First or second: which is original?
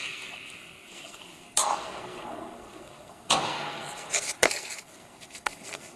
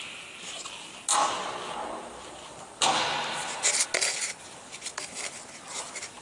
second